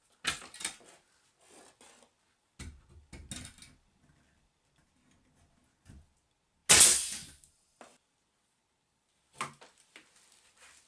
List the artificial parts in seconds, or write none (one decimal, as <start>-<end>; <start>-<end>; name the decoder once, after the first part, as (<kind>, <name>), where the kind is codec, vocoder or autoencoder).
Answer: none